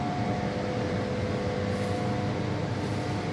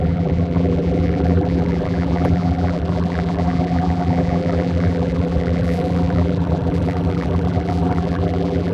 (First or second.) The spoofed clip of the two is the second